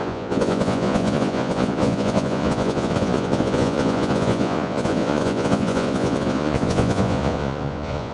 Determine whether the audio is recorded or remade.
remade